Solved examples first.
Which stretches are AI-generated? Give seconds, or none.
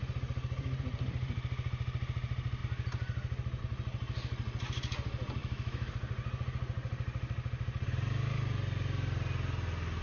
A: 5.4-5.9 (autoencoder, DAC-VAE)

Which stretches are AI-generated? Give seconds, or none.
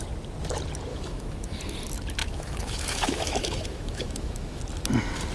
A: 0.9-1.6 (autoencoder, DAC-VAE); 2.2-4.6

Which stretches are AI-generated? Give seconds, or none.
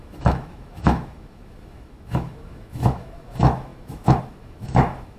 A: 0.0-5.2 (autoencoder, DAC-VAE)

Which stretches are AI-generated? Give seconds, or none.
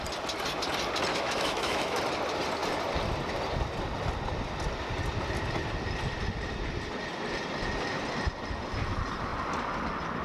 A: 1.1-2.0 (autoencoder, DAC-VAE)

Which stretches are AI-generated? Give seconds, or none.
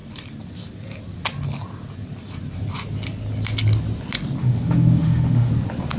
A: 4.4-5.5 (autoencoder, DAC-VAE)